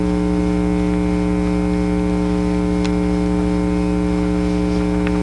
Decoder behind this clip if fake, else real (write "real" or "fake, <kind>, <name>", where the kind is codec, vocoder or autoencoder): real